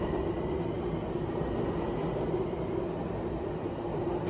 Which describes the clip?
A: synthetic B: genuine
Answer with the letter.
B